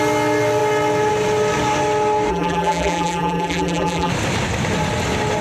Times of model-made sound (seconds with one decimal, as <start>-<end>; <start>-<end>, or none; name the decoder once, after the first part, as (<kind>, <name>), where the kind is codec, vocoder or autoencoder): 2.3-4.1 (vocoder, BigVGAN v2)